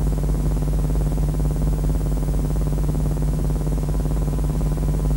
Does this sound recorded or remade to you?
recorded